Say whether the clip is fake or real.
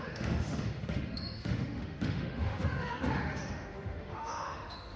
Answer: fake